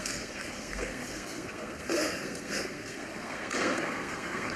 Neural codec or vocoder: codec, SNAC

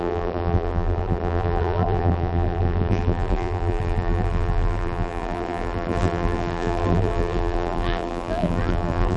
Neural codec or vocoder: vocoder, BigVGAN v2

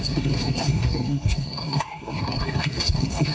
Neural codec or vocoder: codec, SNAC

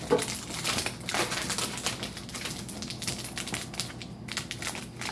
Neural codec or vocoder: none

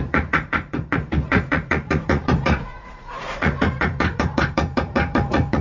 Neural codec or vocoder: vocoder, Vocos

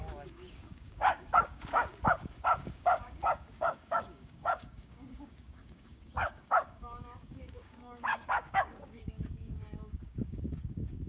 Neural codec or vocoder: codec, DAC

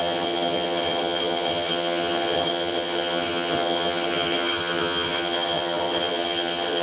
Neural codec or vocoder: vocoder, HiFi-GAN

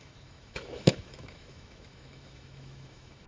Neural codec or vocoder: autoencoder, DAC-VAE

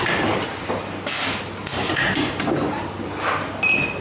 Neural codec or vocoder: none